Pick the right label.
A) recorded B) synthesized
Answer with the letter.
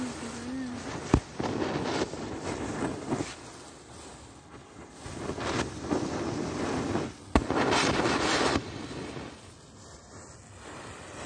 A